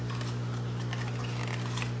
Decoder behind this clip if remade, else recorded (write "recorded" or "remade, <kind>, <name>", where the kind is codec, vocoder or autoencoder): recorded